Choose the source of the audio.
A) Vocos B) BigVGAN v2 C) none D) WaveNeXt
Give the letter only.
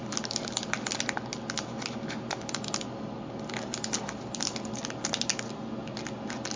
C